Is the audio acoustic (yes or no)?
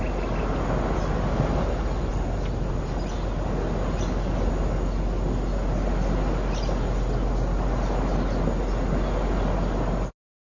yes